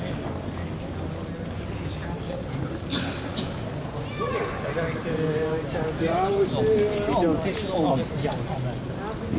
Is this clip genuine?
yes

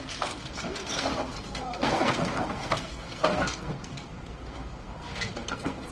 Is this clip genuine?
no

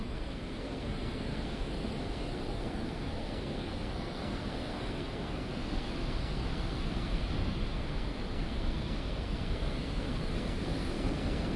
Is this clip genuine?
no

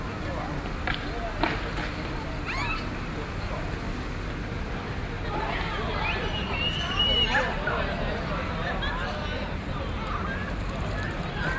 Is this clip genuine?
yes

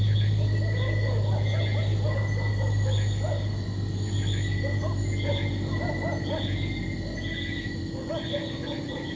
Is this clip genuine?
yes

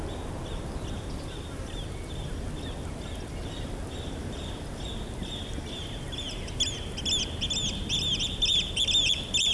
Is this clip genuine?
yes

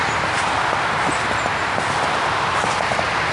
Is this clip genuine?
yes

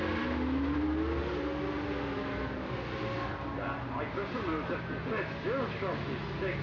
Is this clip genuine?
yes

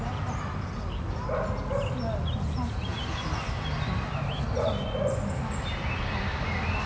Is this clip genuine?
yes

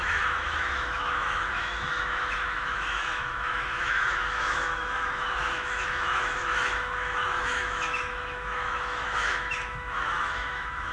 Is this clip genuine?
no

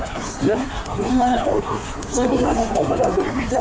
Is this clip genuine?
no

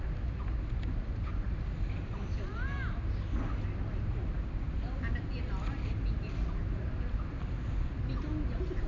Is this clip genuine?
yes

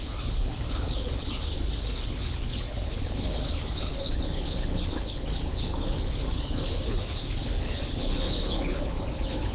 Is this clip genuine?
no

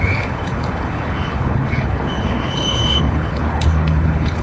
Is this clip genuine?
no